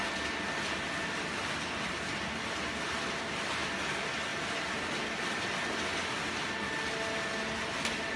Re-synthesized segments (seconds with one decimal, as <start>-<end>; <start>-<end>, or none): 4.3-4.9